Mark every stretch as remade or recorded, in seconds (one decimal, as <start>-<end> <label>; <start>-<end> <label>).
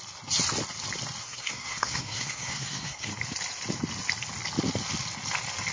0.0-1.2 recorded; 1.2-3.1 remade; 3.1-5.7 recorded